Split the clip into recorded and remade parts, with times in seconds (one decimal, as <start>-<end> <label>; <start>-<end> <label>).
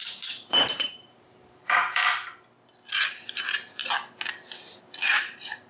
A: 0.0-2.0 remade; 2.0-3.2 recorded; 3.2-3.8 remade; 3.8-5.1 recorded; 5.1-5.7 remade